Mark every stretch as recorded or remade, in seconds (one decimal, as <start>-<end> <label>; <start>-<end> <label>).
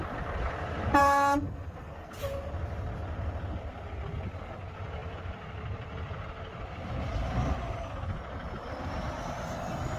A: 0.0-1.0 recorded; 1.0-2.1 remade; 2.1-10.0 recorded